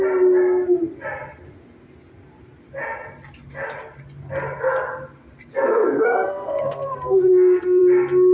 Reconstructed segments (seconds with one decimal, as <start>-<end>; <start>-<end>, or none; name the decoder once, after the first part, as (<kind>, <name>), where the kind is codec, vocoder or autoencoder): 5.5-7.8 (codec, SNAC)